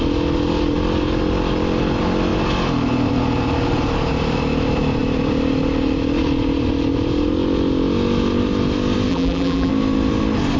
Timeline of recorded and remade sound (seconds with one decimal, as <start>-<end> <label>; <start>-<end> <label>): 0.0-9.1 recorded; 9.1-9.7 remade; 9.7-10.6 recorded